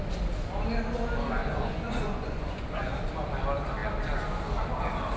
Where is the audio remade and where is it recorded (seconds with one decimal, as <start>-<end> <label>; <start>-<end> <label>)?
0.0-1.4 recorded; 1.4-2.9 remade; 2.9-5.2 recorded